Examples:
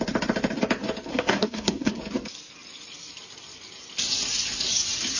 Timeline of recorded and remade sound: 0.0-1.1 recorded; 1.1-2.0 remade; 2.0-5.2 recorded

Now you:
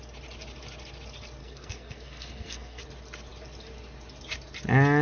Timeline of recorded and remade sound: 0.0-1.4 recorded; 1.4-2.8 remade; 2.8-5.0 recorded

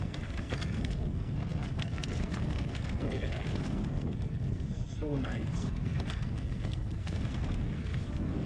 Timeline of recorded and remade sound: 0.0-8.5 remade

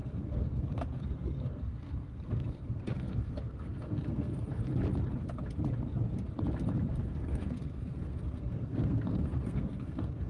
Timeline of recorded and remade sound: 0.0-4.6 remade; 4.6-6.9 recorded; 6.9-10.3 remade

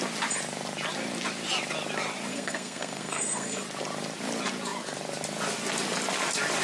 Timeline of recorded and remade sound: 0.0-2.3 recorded; 2.3-3.6 remade; 3.6-6.6 recorded

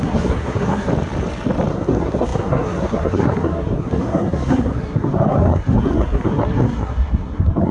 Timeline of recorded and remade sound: 0.0-0.9 remade; 0.9-1.7 recorded; 1.7-7.7 remade

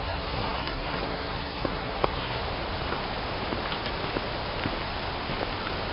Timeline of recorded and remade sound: 0.0-2.4 remade; 2.4-5.9 recorded

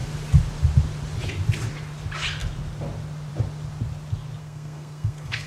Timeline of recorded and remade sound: 0.0-4.4 recorded; 4.4-5.5 remade